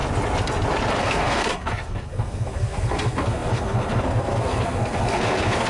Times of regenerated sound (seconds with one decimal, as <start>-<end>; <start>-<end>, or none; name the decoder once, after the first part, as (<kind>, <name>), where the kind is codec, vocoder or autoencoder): 1.0-5.7 (codec, SNAC)